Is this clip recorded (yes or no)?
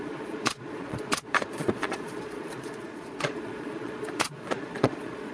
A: no